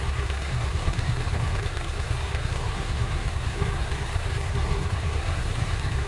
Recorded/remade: remade